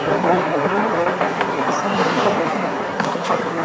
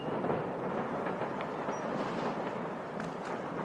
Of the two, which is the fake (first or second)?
first